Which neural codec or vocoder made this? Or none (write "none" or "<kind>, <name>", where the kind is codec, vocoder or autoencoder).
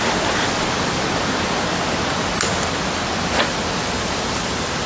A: none